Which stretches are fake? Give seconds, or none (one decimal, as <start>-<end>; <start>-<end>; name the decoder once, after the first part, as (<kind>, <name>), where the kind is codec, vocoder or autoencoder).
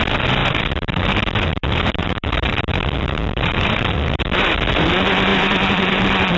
0.4-4.2 (vocoder, BigVGAN v2); 5.3-6.0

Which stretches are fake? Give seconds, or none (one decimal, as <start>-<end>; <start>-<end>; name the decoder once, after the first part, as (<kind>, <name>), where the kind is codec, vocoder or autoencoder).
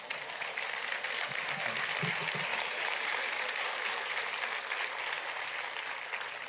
2.5-4.4 (vocoder, BigVGAN v2)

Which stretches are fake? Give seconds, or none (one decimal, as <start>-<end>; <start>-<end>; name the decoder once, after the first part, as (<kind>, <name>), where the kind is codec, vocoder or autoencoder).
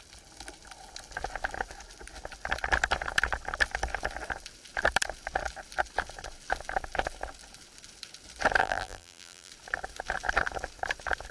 8.6-9.5 (vocoder, BigVGAN v2)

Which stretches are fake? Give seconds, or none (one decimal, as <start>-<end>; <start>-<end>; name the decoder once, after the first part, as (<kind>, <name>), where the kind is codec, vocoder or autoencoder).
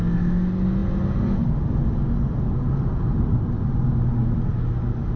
none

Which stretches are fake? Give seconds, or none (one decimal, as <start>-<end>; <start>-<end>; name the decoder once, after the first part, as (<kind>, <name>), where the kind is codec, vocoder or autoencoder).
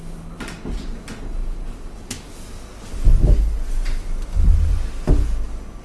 none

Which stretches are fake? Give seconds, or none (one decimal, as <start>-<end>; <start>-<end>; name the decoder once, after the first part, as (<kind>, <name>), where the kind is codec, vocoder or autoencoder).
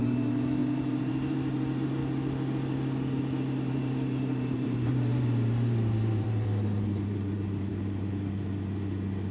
0.0-2.0 (vocoder, BigVGAN v2); 3.7-7.7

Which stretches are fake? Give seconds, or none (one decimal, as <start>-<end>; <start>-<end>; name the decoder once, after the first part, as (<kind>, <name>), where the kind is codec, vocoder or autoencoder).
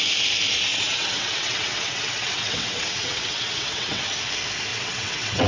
0.7-4.0 (vocoder, WaveNeXt); 4.7-5.5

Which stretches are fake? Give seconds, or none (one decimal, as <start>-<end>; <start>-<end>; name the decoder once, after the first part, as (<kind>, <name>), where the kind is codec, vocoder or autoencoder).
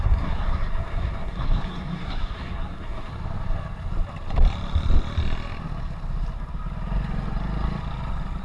0.0-3.1 (codec, SNAC)